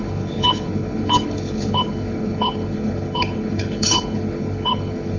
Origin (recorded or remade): remade